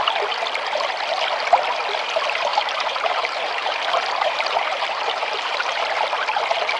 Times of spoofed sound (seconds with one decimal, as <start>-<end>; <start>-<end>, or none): 2.5-5.8